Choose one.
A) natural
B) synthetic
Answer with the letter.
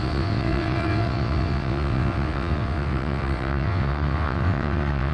B